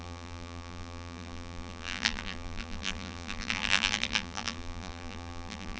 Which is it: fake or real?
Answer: fake